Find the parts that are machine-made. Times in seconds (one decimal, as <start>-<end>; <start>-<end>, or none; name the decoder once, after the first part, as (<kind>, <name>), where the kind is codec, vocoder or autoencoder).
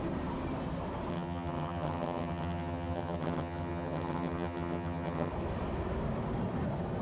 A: 1.1-5.3 (vocoder, HiFi-GAN)